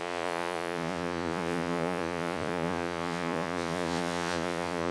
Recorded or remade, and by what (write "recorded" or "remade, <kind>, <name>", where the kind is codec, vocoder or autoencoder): remade, vocoder, Vocos